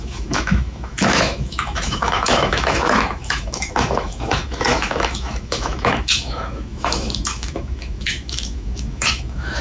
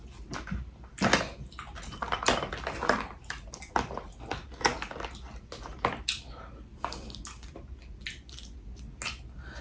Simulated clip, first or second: first